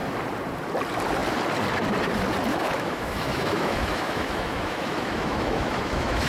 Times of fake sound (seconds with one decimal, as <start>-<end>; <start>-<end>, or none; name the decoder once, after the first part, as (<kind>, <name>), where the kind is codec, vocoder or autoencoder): 2.5-6.3 (autoencoder, DAC-VAE)